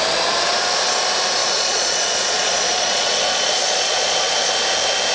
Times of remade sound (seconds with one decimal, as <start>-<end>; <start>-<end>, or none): 1.4-4.5